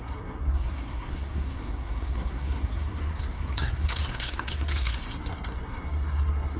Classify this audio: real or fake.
fake